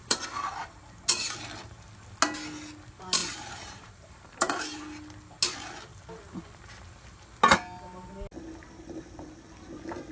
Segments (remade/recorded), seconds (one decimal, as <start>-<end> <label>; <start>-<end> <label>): 0.0-0.5 remade; 0.5-3.2 recorded; 3.2-4.8 remade; 4.8-10.1 recorded